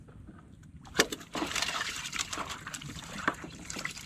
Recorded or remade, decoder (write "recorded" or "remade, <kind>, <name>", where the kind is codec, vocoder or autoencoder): remade, vocoder, BigVGAN v2